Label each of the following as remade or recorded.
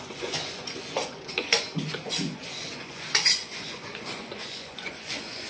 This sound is remade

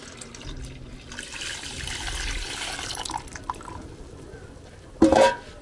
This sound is recorded